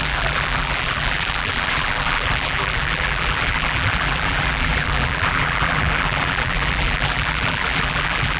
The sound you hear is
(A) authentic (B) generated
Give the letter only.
B